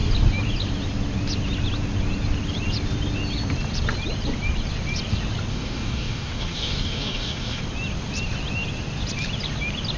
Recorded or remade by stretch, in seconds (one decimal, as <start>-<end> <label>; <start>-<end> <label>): 0.0-5.5 recorded; 5.5-7.6 remade; 7.6-10.0 recorded